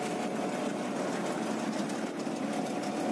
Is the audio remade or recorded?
recorded